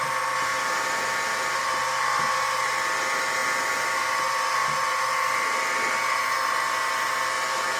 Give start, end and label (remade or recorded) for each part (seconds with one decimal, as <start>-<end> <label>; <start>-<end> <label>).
0.0-7.8 recorded